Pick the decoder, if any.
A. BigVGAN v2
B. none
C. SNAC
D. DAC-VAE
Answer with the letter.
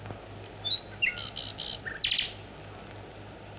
B